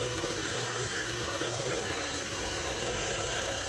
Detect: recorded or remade remade